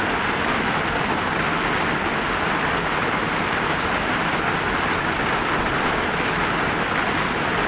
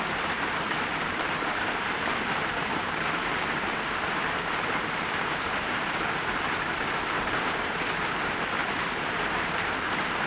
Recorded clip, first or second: first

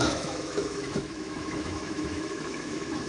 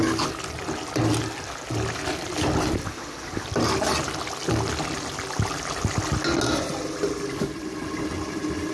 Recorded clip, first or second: second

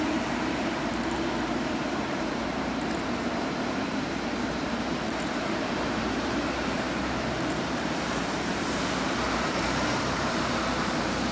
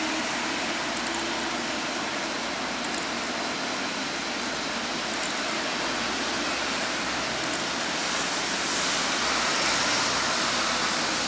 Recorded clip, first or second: second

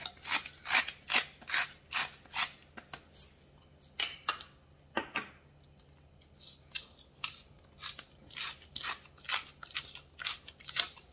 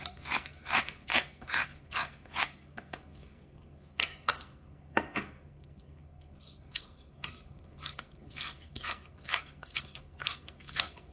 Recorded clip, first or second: first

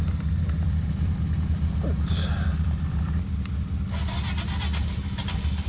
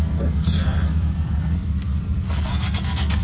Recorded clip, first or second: first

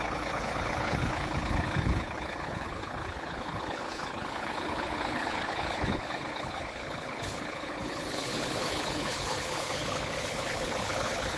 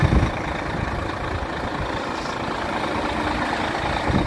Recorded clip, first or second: second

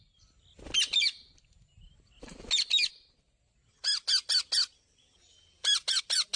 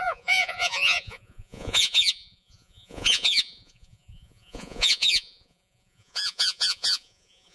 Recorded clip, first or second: first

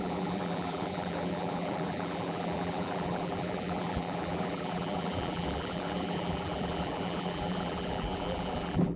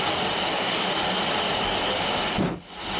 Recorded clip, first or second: second